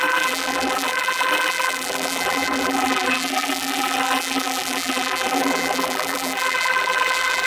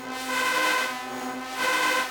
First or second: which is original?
second